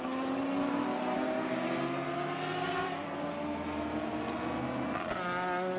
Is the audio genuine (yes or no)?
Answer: yes